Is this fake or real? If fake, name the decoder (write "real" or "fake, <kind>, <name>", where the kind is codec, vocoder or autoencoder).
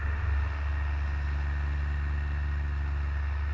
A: real